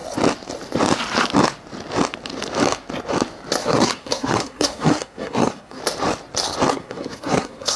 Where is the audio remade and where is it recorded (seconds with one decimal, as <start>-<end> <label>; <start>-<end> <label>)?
0.0-3.6 recorded; 3.6-5.8 remade; 5.8-6.7 recorded; 6.7-7.8 remade